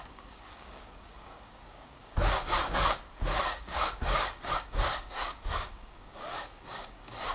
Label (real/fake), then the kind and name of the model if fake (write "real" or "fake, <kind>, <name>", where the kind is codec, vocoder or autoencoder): fake, codec, DAC